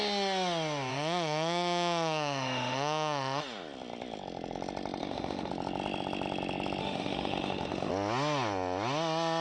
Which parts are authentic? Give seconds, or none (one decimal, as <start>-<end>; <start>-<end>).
0.0-0.9; 3.4-5.0; 5.5-6.8; 7.9-9.4